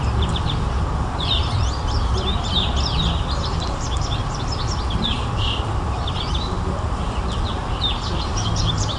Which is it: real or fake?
fake